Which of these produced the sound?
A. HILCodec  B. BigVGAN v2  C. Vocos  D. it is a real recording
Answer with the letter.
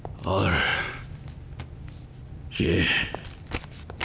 D